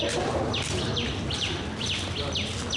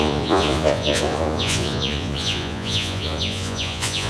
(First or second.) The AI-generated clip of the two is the second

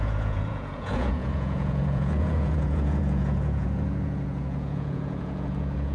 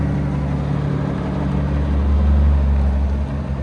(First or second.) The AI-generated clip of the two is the first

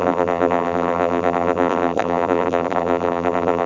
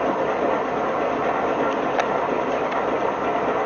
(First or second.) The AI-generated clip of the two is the first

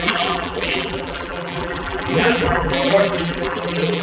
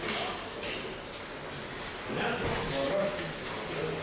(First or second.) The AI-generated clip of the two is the first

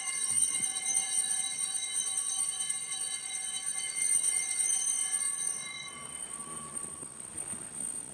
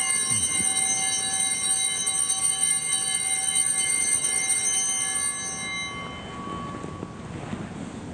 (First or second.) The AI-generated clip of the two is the first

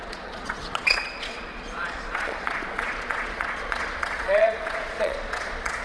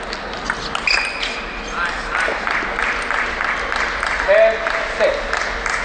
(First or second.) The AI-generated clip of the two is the first